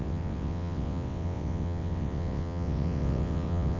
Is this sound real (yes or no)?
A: no